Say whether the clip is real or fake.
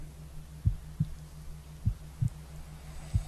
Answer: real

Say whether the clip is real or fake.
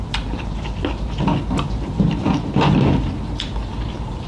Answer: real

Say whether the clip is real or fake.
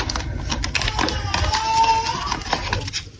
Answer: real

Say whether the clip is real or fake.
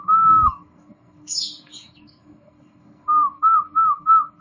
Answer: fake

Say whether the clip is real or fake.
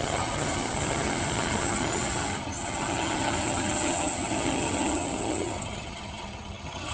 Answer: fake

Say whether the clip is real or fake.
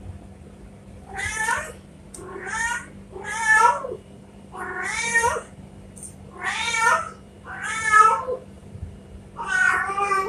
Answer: fake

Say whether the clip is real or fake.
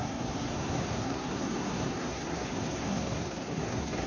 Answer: fake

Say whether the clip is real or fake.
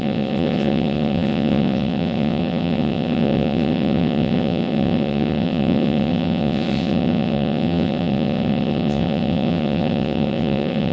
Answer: fake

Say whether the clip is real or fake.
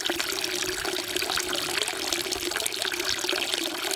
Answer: real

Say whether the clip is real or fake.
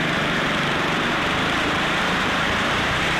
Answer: fake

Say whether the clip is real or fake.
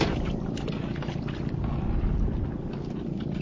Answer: real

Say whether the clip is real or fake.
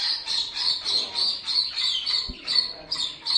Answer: real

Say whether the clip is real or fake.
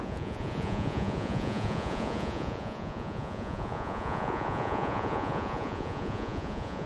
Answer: fake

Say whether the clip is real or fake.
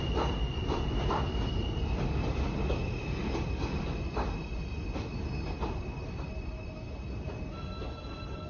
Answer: real